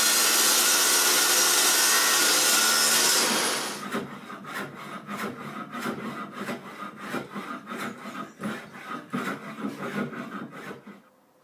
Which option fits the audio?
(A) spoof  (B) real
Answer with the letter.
B